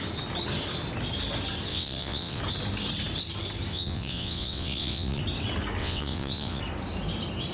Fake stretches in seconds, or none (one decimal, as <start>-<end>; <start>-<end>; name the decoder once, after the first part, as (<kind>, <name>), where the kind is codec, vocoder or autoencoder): 1.7-2.4 (vocoder, WaveNeXt); 3.7-5.2; 5.8-6.6